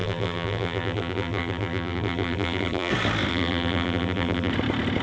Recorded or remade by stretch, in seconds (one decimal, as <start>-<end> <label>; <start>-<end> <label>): 0.0-2.9 remade; 2.9-3.3 recorded; 3.3-4.5 remade; 4.5-5.0 recorded